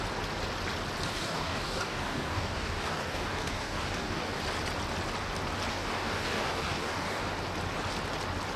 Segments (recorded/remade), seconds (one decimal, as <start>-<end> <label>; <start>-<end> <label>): 0.0-1.1 recorded; 1.1-4.4 remade; 4.4-5.7 recorded; 5.7-7.2 remade; 7.2-8.6 recorded